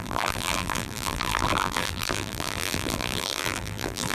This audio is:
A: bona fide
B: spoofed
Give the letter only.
B